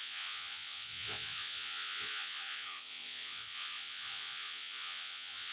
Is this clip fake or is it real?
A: fake